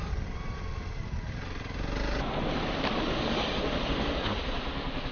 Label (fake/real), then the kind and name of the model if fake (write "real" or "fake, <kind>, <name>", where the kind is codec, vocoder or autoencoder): real